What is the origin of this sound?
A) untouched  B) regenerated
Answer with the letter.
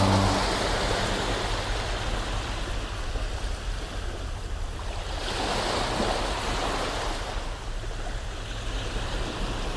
A